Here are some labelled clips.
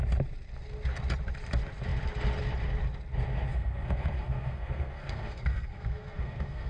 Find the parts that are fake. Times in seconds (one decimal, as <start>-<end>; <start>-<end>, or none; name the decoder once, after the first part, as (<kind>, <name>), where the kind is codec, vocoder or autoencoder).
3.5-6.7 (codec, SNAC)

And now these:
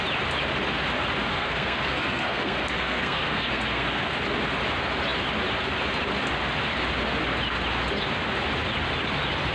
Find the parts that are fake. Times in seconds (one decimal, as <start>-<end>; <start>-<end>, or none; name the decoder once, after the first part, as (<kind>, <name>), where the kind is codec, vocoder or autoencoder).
1.3-4.1 (codec, SNAC)

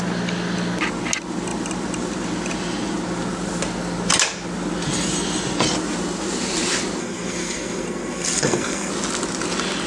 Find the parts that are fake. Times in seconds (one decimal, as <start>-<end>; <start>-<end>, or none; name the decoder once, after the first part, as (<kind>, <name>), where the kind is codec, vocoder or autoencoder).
7.0-8.9 (codec, SNAC)

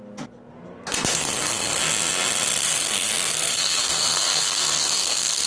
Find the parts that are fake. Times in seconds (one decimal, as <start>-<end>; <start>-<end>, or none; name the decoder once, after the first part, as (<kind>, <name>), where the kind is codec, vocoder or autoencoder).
1.1-1.8 (codec, SNAC); 2.6-5.5

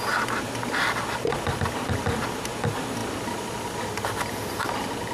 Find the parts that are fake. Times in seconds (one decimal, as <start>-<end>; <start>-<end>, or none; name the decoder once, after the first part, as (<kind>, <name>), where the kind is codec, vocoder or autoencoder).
none

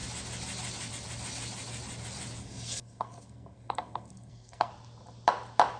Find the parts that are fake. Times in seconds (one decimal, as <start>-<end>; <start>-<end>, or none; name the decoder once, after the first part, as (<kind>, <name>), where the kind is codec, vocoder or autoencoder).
2.4-4.7 (codec, SNAC)

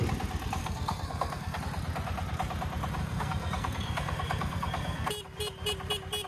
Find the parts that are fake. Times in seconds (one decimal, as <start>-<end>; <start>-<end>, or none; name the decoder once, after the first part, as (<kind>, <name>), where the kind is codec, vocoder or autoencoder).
0.6-1.6 (codec, SNAC); 3.0-5.1

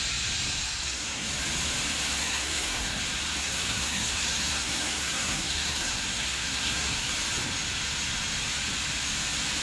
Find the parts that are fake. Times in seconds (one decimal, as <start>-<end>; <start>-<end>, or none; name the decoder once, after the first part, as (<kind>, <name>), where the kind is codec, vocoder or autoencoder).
0.8-1.3 (codec, SNAC); 2.2-3.0; 3.4-7.1